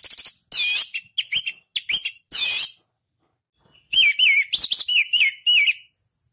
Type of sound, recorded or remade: recorded